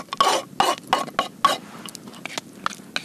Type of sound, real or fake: real